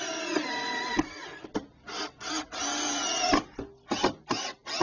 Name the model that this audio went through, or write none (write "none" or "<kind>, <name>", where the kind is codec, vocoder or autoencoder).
none